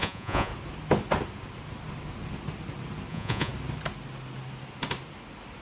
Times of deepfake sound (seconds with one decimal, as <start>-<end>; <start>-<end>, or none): 0.0-0.5; 3.1-3.5